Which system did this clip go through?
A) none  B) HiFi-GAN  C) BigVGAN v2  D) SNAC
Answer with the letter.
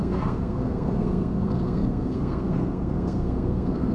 D